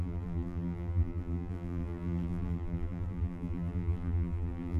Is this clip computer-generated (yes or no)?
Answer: yes